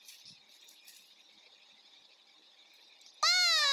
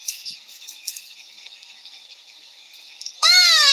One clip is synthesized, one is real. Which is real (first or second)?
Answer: first